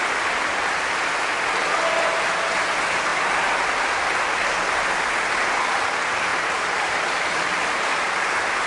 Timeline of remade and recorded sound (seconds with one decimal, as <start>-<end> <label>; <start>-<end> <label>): 0.0-8.7 recorded